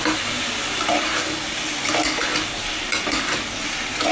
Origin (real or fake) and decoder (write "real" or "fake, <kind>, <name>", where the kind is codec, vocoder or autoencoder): real